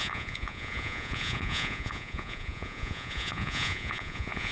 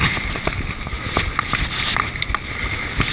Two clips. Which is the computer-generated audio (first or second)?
first